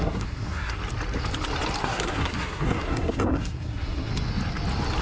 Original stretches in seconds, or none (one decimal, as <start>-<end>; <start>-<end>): 0.8-1.8; 4.1-5.0